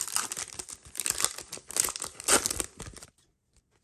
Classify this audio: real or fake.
real